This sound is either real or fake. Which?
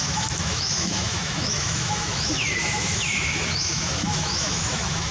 fake